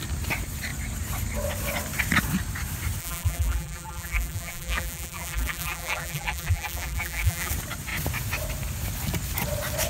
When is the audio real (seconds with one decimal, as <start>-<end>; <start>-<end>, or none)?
0.0-3.0; 7.5-9.9

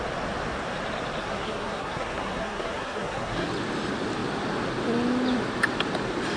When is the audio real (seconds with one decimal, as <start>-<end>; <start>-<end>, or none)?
0.0-1.2; 3.5-6.4

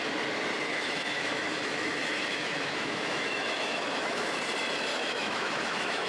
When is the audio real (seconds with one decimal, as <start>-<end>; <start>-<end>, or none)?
0.0-0.7; 4.4-4.9

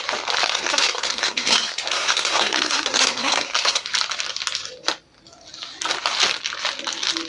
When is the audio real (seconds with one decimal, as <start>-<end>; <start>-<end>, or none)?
0.0-0.4; 3.9-7.3

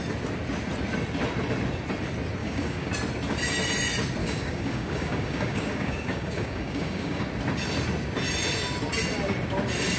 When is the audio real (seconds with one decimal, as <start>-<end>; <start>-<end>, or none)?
0.0-2.4; 2.9-4.2; 7.2-10.0

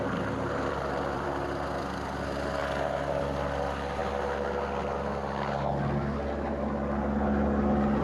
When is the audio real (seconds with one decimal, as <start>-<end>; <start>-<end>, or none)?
2.6-3.2; 4.0-8.0

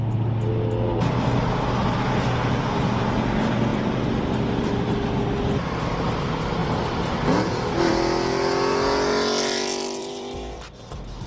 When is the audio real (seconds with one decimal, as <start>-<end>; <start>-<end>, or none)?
0.0-3.7; 4.9-10.0; 10.6-11.3